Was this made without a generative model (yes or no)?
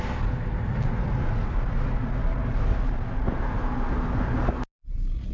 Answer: yes